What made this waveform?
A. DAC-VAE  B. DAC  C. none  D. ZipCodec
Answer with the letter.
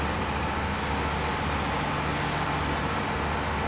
C